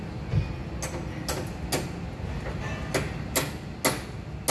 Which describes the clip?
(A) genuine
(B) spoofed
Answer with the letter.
A